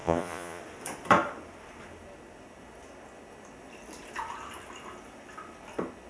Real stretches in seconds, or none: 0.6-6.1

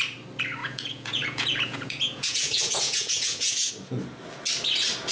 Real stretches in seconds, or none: 0.0-0.6; 3.7-5.1